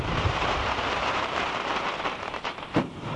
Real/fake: fake